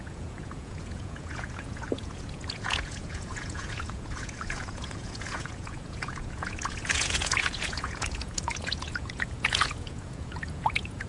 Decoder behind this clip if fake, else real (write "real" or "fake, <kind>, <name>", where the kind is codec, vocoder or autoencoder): fake, vocoder, Vocos